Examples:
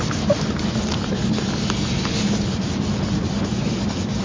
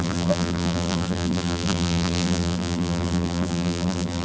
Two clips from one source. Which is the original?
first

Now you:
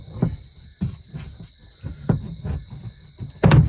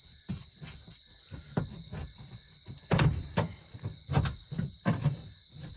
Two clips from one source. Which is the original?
first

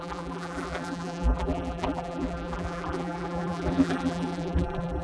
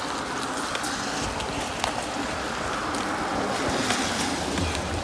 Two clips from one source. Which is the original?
second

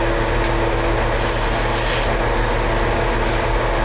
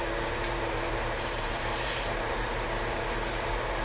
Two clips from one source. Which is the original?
first